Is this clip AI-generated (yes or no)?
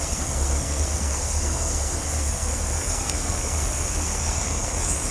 yes